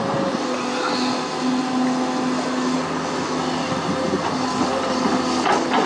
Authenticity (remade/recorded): recorded